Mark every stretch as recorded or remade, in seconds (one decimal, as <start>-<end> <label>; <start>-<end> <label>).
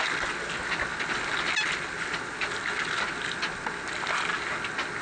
0.0-5.0 recorded